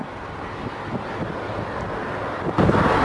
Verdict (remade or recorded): recorded